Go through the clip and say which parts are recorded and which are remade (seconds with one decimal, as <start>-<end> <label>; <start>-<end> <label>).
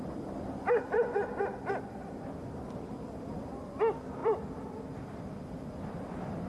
0.0-2.0 recorded; 2.0-3.5 remade; 3.5-4.2 recorded; 4.2-6.5 remade